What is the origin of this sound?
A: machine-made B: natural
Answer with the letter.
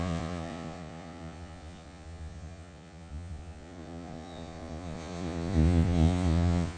A